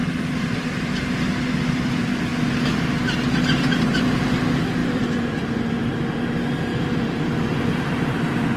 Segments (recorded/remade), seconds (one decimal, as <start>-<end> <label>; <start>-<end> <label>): 0.0-1.0 remade; 1.0-4.8 recorded; 4.8-5.9 remade; 5.9-6.7 recorded; 6.7-8.1 remade; 8.1-8.6 recorded